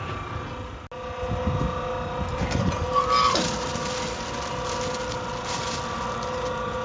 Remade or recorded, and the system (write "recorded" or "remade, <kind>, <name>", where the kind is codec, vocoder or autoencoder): recorded